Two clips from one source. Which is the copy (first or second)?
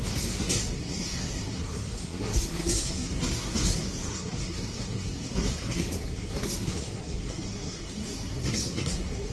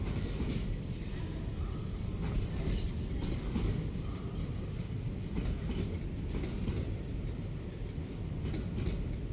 first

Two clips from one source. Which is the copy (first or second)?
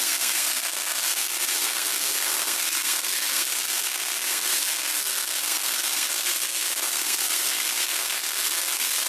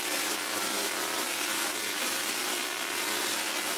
first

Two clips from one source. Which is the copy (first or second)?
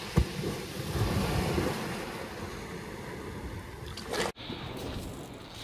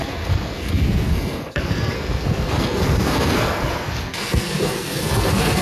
second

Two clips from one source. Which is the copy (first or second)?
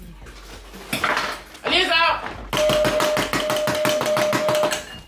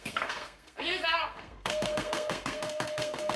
second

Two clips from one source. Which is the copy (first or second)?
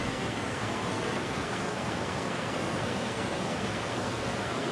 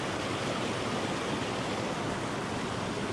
first